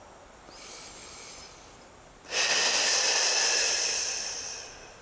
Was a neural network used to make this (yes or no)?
no